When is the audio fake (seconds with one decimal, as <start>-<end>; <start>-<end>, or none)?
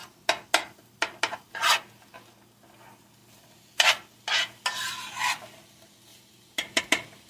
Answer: 6.1-6.8